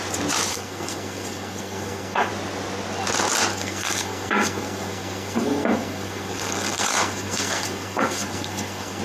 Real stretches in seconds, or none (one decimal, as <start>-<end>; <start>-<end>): 0.0-0.5; 2.3-3.5